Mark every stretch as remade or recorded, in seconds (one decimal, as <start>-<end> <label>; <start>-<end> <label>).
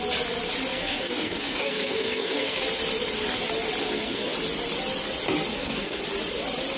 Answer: 0.0-0.7 recorded; 0.7-2.6 remade; 2.6-3.8 recorded; 3.8-4.3 remade; 4.3-5.5 recorded; 5.5-6.0 remade; 6.0-6.8 recorded